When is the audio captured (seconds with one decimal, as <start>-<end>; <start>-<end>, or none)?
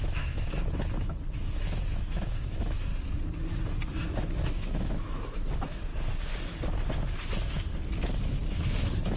2.9-4.0; 5.9-8.5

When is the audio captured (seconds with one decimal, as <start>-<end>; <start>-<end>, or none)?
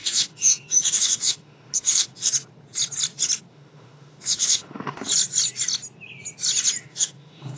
2.3-3.5; 5.1-6.8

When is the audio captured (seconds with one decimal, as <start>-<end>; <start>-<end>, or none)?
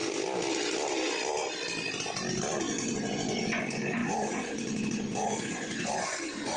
0.0-2.6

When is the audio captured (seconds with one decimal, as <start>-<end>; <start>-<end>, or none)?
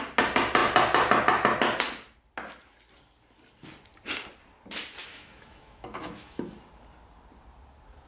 0.0-5.1; 6.5-8.1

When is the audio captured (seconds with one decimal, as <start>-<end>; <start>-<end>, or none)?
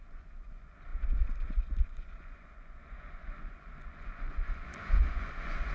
none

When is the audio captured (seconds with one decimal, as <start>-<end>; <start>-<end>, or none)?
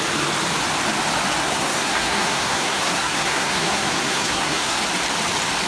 0.0-1.4; 4.8-5.7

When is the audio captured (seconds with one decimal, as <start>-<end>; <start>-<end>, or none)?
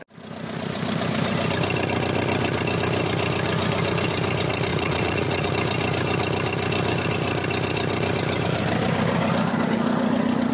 0.0-4.7; 5.5-10.5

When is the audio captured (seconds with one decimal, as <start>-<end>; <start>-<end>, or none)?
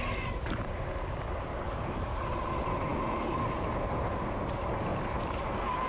0.0-4.9; 5.4-5.9